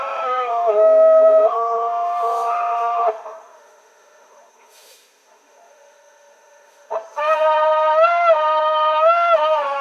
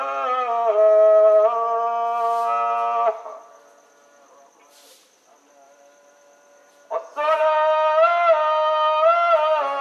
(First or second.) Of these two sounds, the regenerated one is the first